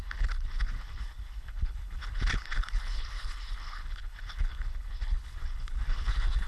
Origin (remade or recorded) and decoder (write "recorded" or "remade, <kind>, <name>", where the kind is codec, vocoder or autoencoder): remade, codec, HILCodec